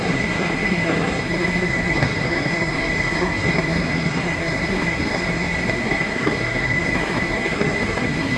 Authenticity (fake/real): fake